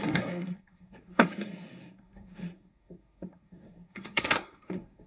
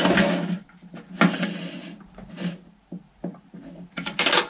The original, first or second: second